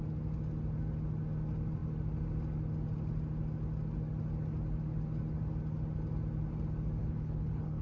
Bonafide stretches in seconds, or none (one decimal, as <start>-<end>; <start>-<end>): 0.0-7.0

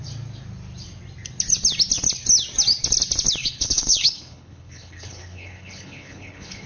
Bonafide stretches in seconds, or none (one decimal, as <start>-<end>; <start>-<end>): 0.0-3.4

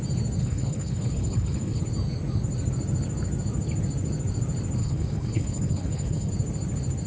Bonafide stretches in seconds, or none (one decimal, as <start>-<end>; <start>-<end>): 0.0-0.4; 1.8-4.8; 6.3-7.1